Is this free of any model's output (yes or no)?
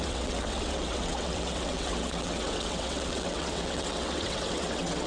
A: no